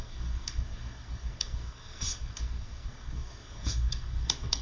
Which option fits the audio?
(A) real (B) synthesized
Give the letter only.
B